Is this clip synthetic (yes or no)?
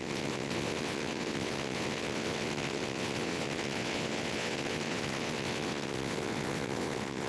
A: yes